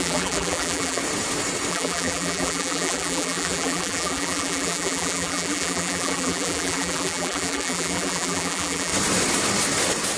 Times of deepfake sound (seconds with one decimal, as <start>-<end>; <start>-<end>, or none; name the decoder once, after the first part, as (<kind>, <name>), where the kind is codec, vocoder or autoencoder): 0.0-1.0 (vocoder, BigVGAN v2); 1.7-8.9